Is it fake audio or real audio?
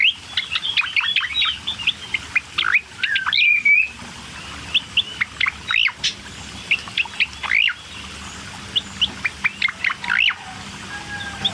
real